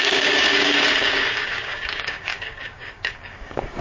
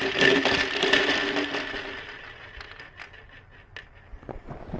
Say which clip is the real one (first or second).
second